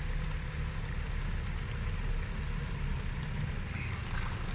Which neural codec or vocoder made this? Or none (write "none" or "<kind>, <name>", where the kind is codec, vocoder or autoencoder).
none